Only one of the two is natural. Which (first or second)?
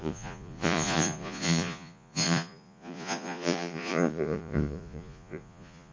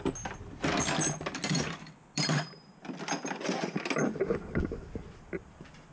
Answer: second